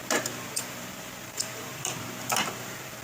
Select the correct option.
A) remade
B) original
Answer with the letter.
A